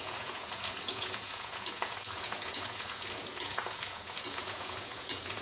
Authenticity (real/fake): fake